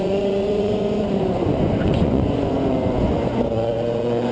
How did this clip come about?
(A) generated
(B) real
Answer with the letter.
A